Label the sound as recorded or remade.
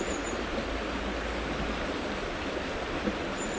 recorded